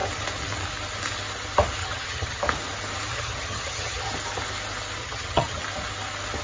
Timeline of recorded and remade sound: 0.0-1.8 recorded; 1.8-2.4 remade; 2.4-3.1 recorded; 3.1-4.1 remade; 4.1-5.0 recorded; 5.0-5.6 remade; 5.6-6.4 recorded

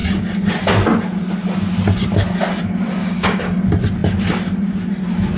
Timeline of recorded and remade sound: 0.0-3.0 recorded; 3.0-3.6 remade; 3.6-5.4 recorded

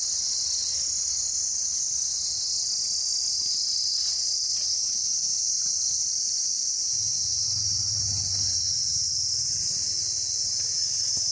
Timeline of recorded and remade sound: 0.0-3.1 recorded; 3.1-4.1 remade; 4.1-5.3 recorded; 5.3-6.1 remade; 6.1-11.3 recorded

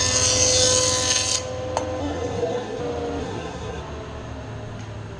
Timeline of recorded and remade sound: 0.0-2.0 recorded; 2.0-2.8 remade; 2.8-3.2 recorded; 3.2-3.8 remade; 3.8-5.2 recorded

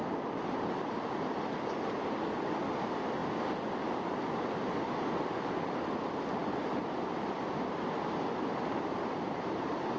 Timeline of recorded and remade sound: 0.0-10.0 recorded

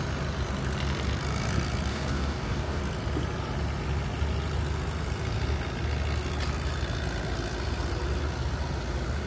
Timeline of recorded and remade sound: 0.0-1.9 recorded; 1.9-2.8 remade; 2.8-9.3 recorded